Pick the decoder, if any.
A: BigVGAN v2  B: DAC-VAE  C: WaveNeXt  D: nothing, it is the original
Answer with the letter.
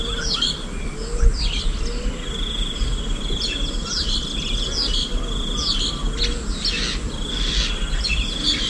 D